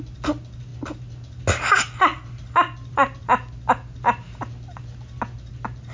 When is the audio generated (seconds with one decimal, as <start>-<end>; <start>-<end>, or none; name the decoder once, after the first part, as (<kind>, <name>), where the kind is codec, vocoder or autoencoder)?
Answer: none